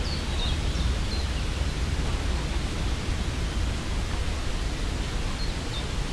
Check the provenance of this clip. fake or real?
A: real